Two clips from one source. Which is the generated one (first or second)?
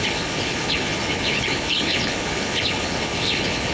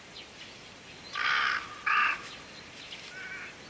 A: first